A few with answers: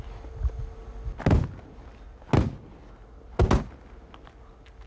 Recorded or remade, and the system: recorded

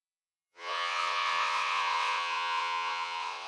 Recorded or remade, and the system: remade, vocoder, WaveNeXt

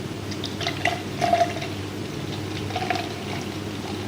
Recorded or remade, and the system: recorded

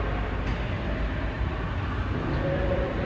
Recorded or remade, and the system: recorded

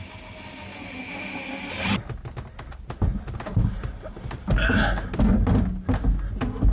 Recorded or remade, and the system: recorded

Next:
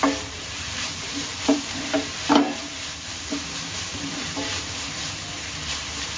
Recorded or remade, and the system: remade, vocoder, BigVGAN v2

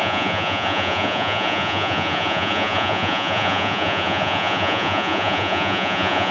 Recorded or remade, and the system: remade, vocoder, Vocos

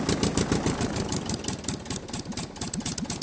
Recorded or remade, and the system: recorded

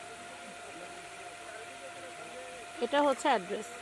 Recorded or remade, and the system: recorded